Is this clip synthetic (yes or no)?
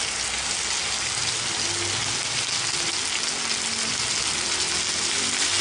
no